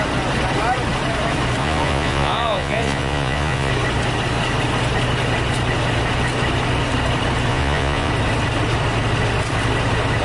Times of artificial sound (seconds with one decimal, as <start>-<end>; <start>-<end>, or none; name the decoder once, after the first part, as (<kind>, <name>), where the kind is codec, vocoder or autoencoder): 1.6-3.7 (vocoder, Vocos); 7.5-8.1